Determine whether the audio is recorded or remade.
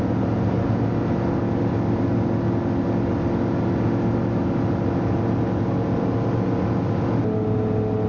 recorded